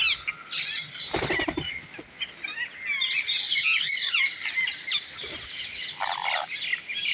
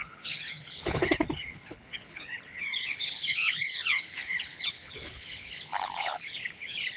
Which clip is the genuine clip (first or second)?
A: first